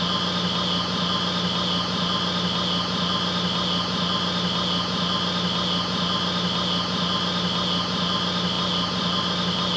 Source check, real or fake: real